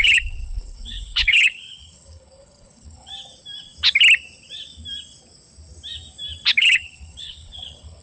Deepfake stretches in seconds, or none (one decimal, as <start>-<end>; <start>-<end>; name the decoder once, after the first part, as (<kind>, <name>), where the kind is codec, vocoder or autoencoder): 0.0-3.1 (codec, HILCodec); 6.6-8.0